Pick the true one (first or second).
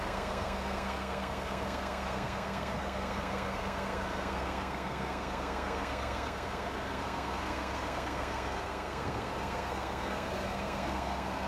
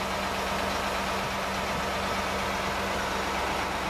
second